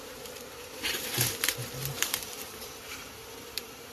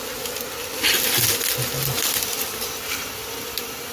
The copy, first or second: first